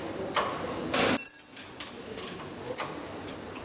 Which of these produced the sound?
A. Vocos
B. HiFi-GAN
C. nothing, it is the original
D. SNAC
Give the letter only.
C